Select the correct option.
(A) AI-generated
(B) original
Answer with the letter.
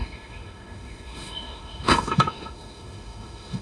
A